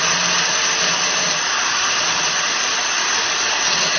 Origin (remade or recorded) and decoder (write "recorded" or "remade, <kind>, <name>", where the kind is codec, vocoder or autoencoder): recorded